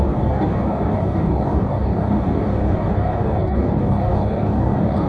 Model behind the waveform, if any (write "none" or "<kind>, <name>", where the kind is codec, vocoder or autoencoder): codec, DAC